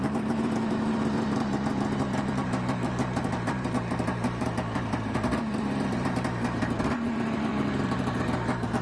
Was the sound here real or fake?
fake